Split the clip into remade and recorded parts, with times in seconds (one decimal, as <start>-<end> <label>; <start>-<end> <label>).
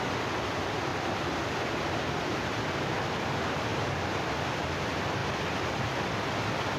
0.0-0.9 recorded; 0.9-2.9 remade; 2.9-3.7 recorded; 3.7-4.3 remade; 4.3-6.8 recorded